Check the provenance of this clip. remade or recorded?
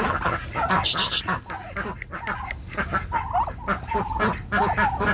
recorded